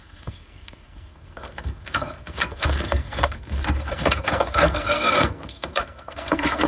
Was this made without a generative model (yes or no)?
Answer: no